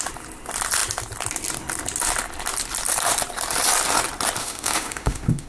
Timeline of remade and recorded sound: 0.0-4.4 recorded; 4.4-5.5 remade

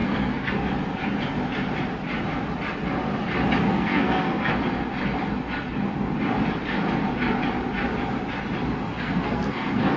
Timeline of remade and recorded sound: 0.0-0.5 remade; 0.5-3.6 recorded; 3.6-4.5 remade; 4.5-8.9 recorded; 8.9-10.0 remade

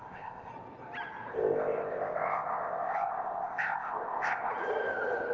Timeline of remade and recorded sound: 0.0-0.5 remade; 0.5-1.3 recorded; 1.3-4.5 remade; 4.5-5.3 recorded

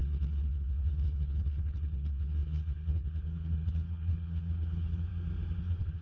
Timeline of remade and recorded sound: 0.0-5.1 remade; 5.1-5.6 recorded; 5.6-6.0 remade

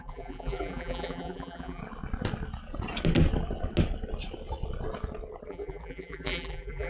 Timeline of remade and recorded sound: 0.0-1.8 remade; 1.8-5.5 recorded; 5.5-6.9 remade

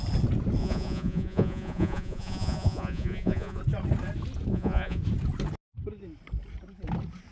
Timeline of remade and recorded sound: 0.0-0.6 recorded; 0.6-3.6 remade; 3.6-4.5 recorded; 4.5-5.0 remade; 5.0-7.3 recorded